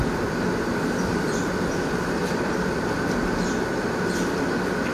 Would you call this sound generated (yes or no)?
no